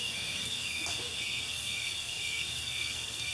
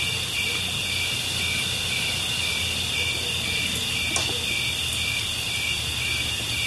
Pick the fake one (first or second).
first